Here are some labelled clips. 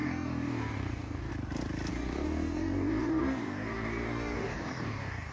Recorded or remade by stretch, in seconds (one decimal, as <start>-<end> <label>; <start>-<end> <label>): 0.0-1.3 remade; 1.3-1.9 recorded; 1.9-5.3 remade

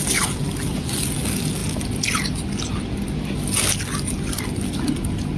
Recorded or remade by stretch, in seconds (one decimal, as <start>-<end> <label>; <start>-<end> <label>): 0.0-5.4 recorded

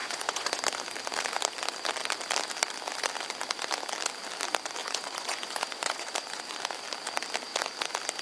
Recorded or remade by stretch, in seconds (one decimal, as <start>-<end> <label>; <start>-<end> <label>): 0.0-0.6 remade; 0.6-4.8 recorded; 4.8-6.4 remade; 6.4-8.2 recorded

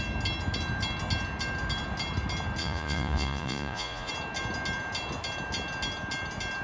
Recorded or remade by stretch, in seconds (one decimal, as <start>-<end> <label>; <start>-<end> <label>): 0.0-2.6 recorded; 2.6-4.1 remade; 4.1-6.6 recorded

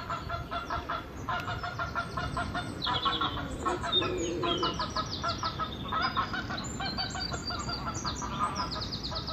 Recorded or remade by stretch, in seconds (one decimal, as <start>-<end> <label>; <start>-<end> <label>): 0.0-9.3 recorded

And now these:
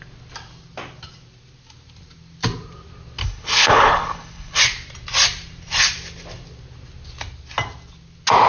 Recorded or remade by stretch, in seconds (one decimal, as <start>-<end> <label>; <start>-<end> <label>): 0.0-3.2 recorded; 3.2-4.6 remade; 4.6-8.5 recorded

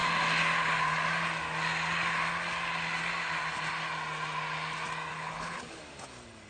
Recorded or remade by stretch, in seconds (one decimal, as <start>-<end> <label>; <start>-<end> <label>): 0.0-5.1 recorded; 5.1-5.8 remade; 5.8-6.5 recorded